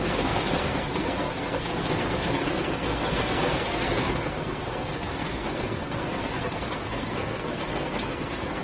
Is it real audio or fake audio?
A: fake